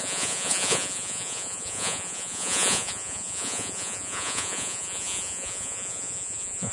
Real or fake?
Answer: fake